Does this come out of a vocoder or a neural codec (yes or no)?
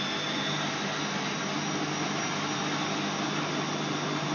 no